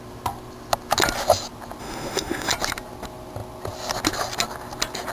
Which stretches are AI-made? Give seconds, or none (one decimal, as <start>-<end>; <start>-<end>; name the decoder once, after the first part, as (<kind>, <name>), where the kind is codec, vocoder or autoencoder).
1.8-2.5 (autoencoder, DAC-VAE)